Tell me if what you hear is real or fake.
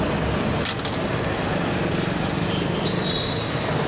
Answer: real